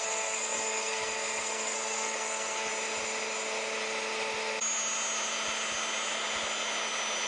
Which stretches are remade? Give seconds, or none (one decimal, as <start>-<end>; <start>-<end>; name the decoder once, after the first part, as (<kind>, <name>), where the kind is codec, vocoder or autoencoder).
0.0-2.7 (codec, SNAC)